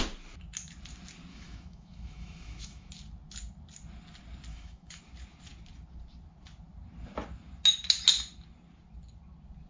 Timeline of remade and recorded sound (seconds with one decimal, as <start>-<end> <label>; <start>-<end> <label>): 0.0-1.3 recorded; 1.3-2.9 remade; 2.9-4.5 recorded; 4.5-5.0 remade; 5.0-9.7 recorded